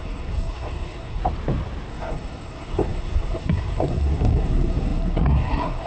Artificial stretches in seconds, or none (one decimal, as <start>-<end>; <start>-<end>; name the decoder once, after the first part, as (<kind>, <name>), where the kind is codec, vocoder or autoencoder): 0.0-1.2 (codec, SNAC); 1.9-5.9